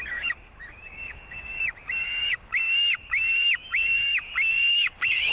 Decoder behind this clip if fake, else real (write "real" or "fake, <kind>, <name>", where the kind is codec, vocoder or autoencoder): fake, codec, DAC